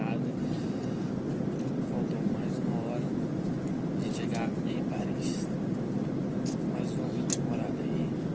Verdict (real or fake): real